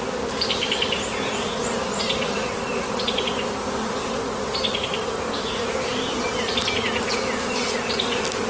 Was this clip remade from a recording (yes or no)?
no